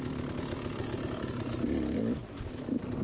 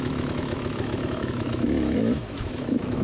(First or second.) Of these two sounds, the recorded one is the first